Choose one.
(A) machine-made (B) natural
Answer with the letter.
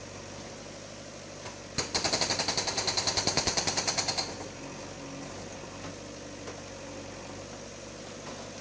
B